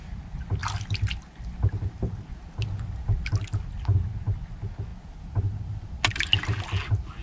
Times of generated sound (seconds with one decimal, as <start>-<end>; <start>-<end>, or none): none